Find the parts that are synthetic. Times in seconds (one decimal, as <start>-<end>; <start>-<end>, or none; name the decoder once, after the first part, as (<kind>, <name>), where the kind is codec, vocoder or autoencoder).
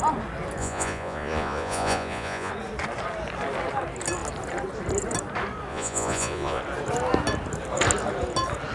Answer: 0.6-2.5 (vocoder, Vocos); 5.7-6.6